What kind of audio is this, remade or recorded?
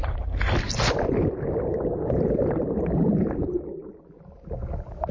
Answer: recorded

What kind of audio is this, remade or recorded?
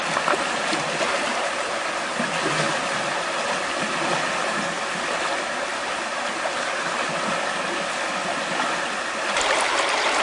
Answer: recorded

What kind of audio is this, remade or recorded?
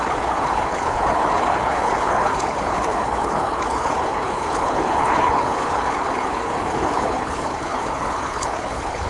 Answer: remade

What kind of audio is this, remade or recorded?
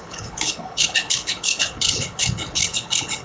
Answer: remade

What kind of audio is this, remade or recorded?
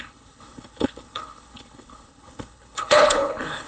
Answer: remade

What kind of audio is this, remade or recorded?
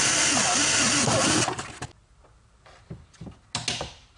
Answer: recorded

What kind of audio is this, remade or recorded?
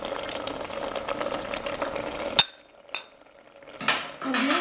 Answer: recorded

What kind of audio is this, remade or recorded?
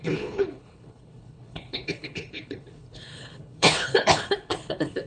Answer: remade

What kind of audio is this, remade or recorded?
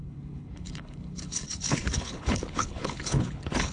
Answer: remade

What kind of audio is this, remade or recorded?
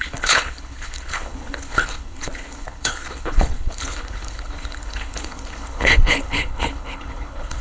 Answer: remade